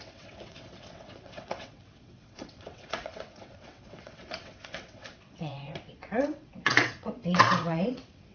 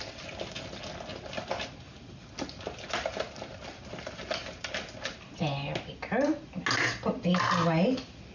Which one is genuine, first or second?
second